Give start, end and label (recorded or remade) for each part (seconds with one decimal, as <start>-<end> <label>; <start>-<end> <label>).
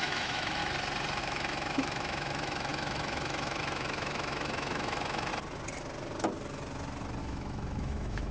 0.0-0.6 remade; 0.6-1.2 recorded; 1.2-5.3 remade; 5.3-7.2 recorded; 7.2-8.3 remade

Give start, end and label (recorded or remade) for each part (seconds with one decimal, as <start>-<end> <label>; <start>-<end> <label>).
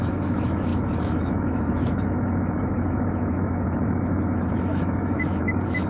0.0-5.9 remade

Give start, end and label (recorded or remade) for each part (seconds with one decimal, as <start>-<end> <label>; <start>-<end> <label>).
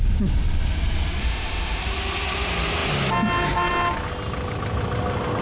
0.0-1.2 recorded; 1.2-1.8 remade; 1.8-5.4 recorded